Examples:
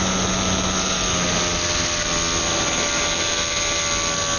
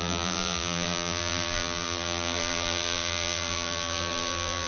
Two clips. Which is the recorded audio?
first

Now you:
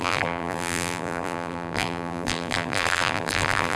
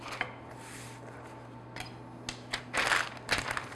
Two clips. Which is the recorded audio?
second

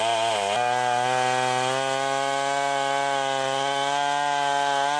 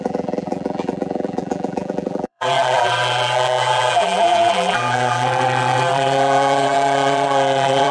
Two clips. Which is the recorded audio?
first